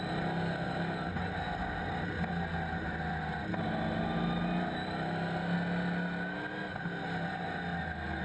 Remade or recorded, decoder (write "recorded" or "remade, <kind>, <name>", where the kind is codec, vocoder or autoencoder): recorded